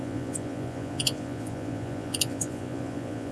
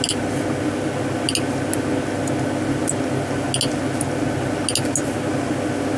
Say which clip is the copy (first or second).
first